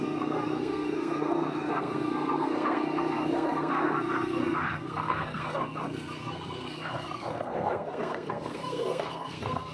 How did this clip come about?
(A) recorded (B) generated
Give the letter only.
B